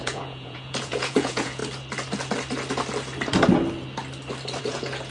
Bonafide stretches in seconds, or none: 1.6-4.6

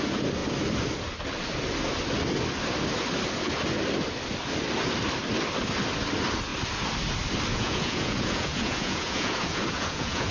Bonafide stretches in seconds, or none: 0.0-7.5

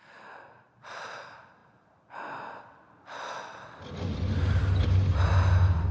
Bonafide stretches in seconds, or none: 0.0-5.9